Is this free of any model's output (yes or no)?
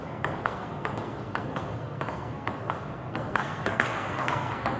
no